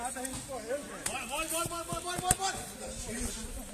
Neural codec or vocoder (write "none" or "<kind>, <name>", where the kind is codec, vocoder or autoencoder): none